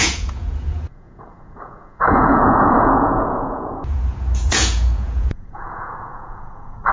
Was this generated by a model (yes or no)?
yes